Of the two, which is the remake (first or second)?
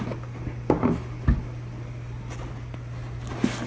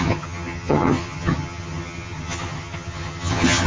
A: second